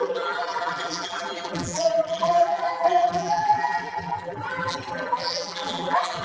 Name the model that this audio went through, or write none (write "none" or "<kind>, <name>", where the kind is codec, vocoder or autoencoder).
vocoder, BigVGAN v2